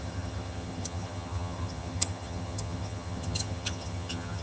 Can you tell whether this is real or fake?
fake